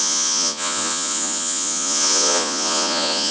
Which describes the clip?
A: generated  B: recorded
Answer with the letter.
A